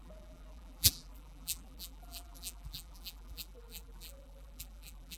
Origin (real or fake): fake